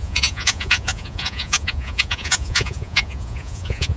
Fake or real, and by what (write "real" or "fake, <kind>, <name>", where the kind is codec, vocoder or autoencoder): fake, vocoder, Vocos